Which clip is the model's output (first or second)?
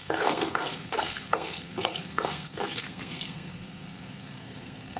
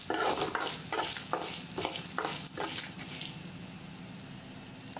first